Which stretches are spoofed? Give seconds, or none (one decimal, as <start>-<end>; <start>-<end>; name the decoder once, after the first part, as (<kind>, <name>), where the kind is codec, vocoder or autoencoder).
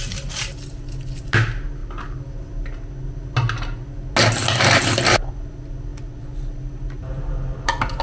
none